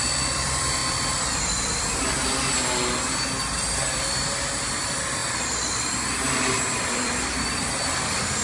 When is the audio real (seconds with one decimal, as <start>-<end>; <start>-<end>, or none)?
0.8-3.9; 5.2-6.6